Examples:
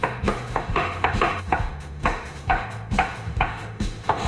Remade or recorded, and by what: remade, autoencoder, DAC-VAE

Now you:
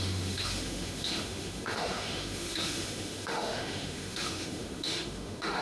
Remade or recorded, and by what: remade, autoencoder, DAC-VAE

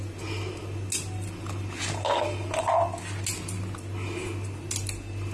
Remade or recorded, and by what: recorded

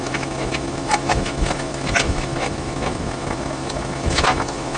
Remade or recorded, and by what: remade, autoencoder, DAC-VAE